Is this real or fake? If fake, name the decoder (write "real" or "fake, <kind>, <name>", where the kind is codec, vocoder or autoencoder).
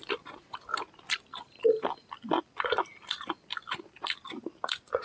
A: real